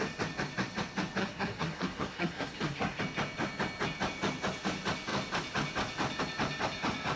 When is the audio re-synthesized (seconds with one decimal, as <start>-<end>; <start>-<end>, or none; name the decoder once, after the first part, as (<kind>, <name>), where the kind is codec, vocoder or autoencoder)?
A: 1.2-3.0 (codec, SNAC)

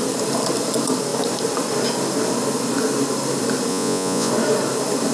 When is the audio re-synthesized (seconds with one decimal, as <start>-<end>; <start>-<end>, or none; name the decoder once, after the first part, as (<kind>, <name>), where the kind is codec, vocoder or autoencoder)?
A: 3.7-4.3 (vocoder, Vocos)

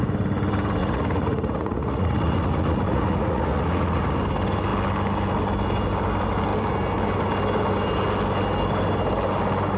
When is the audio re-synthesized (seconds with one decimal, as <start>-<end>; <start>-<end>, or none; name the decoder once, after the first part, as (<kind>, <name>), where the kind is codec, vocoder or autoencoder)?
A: 0.8-4.2 (vocoder, Vocos)

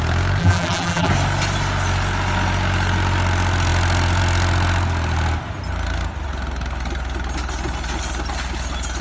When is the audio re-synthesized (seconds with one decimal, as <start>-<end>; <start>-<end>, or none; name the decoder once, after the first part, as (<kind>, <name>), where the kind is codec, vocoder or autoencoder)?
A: 0.4-1.1 (vocoder, BigVGAN v2)